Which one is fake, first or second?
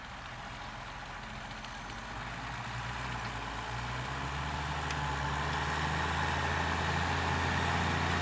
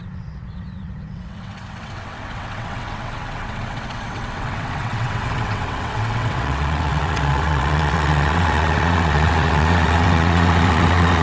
second